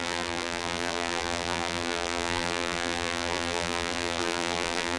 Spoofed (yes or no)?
yes